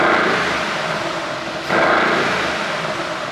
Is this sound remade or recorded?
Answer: recorded